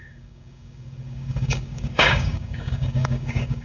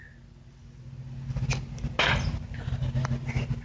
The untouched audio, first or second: second